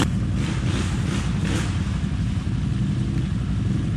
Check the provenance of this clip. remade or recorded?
recorded